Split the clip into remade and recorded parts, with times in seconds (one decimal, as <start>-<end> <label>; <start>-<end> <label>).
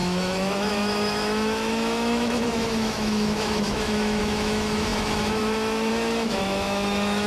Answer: 0.0-7.3 remade